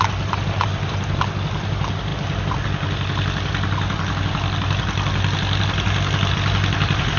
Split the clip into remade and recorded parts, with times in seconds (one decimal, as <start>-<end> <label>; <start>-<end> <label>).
0.0-7.2 recorded